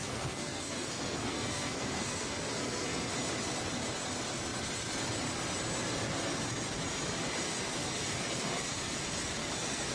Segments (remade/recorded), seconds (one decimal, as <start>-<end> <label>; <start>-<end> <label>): 0.0-3.1 remade; 3.1-7.8 recorded; 7.8-9.0 remade; 9.0-9.4 recorded; 9.4-9.9 remade